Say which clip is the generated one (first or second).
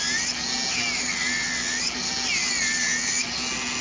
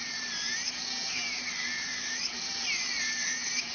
second